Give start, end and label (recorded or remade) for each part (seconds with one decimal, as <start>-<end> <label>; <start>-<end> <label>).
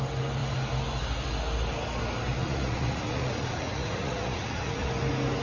0.0-2.4 recorded; 2.4-4.9 remade; 4.9-5.4 recorded